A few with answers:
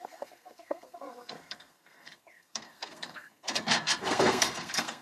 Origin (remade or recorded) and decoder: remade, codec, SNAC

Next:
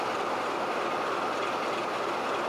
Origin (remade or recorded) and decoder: recorded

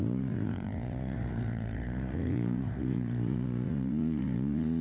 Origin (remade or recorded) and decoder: remade, vocoder, Vocos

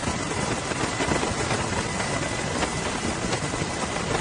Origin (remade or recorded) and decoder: recorded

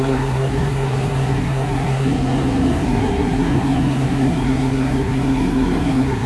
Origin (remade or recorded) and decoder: remade, codec, SNAC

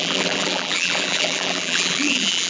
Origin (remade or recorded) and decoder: remade, vocoder, BigVGAN v2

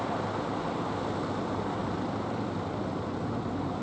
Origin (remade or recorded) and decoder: recorded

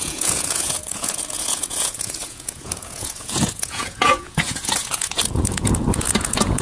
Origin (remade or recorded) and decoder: remade, vocoder, Vocos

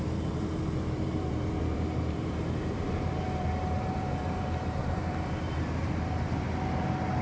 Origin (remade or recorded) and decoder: remade, vocoder, BigVGAN v2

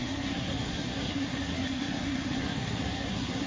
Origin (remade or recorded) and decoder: remade, codec, SNAC